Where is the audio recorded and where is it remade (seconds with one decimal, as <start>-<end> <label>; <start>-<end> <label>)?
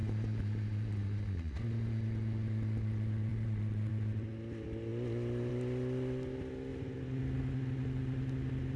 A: 0.0-1.6 remade; 1.6-3.3 recorded; 3.3-3.9 remade; 3.9-8.8 recorded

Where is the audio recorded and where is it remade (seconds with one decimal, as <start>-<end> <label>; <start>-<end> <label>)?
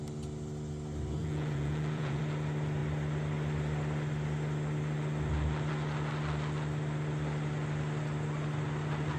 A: 0.0-1.2 recorded; 1.2-2.2 remade; 2.2-9.2 recorded